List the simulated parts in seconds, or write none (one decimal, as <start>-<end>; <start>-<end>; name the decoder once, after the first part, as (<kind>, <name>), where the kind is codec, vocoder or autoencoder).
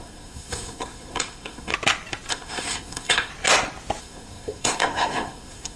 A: 0.0-1.7 (codec, SNAC); 2.3-3.3; 4.0-5.8